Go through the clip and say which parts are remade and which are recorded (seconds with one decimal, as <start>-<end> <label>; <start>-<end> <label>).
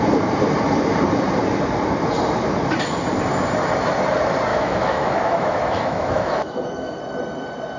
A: 0.0-4.5 recorded; 4.5-7.0 remade; 7.0-7.8 recorded